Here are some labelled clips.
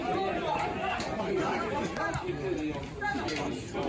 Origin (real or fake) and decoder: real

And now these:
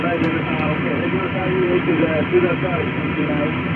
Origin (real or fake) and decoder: fake, vocoder, BigVGAN v2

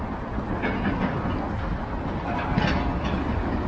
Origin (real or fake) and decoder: real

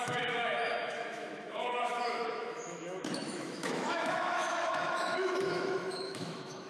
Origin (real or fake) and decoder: fake, autoencoder, DAC-VAE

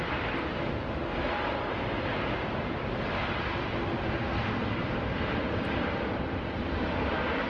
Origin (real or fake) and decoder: real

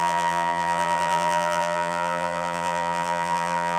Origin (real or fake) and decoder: fake, vocoder, BigVGAN v2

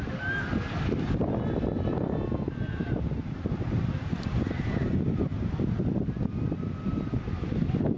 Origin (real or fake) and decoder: real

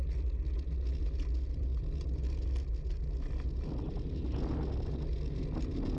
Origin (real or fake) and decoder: real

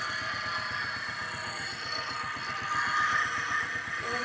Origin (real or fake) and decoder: real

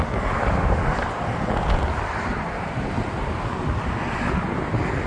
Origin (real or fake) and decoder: real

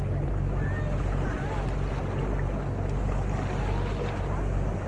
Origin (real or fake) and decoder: real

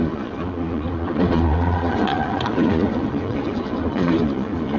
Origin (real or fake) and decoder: fake, vocoder, Vocos